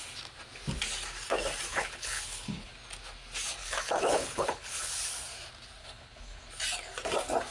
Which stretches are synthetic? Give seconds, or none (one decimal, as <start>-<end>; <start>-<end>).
1.7-2.7; 3.6-4.9; 5.8-6.5